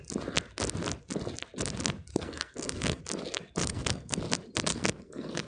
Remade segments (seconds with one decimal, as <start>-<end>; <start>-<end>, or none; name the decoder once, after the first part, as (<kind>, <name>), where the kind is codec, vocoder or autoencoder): 2.1-3.0 (codec, SNAC); 3.6-4.2; 4.7-5.5